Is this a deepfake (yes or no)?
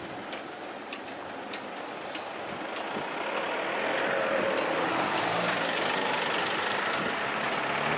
no